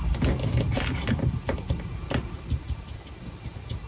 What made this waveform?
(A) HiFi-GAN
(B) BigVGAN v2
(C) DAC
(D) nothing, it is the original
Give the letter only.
D